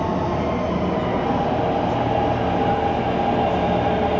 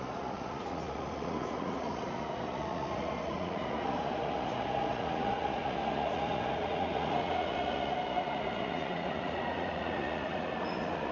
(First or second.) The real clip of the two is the first